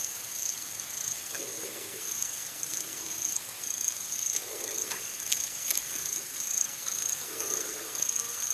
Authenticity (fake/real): fake